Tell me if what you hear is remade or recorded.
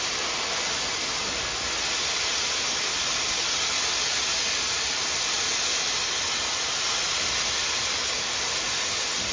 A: recorded